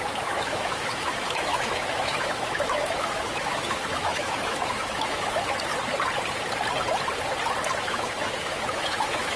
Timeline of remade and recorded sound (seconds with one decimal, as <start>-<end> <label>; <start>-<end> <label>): 0.0-5.7 remade; 5.7-7.8 recorded; 7.8-9.4 remade